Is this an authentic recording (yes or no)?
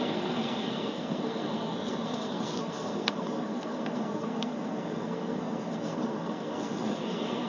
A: no